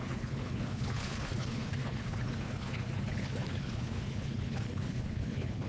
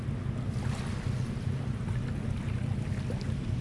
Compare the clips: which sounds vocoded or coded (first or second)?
first